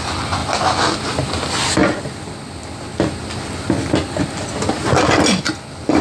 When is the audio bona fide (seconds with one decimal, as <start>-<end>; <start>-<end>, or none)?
0.0-6.0